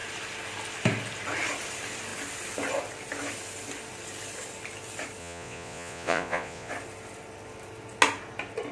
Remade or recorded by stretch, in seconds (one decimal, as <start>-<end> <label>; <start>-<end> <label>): 0.0-5.2 recorded; 5.2-6.7 remade; 6.7-8.7 recorded